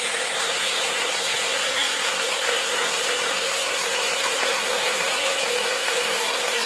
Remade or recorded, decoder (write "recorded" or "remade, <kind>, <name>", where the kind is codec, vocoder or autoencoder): remade, codec, SNAC